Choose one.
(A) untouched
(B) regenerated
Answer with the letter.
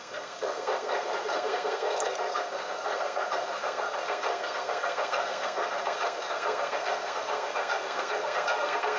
B